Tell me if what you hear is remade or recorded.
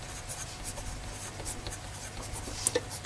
recorded